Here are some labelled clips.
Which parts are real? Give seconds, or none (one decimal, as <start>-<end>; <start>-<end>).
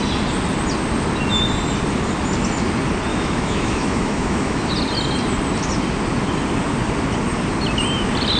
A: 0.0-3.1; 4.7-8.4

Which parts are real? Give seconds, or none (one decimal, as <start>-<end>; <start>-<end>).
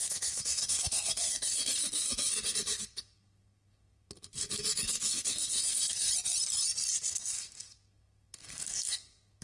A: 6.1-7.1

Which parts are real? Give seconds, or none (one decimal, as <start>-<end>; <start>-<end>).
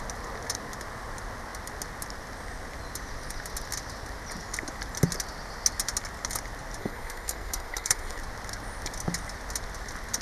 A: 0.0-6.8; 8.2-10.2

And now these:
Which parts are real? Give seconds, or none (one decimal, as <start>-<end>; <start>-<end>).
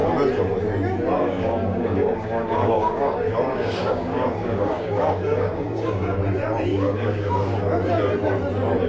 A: 0.0-1.2; 6.2-6.7; 7.3-8.9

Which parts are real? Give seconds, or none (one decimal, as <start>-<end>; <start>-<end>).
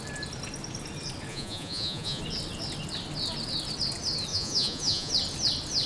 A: 0.0-1.3; 2.2-4.3; 5.1-5.9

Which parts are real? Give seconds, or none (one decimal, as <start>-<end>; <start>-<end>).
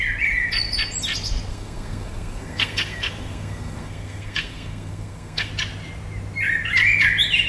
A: 0.0-1.5; 5.5-7.5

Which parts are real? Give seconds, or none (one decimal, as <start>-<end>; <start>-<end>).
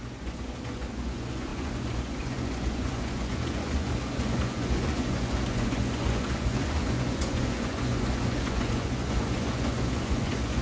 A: none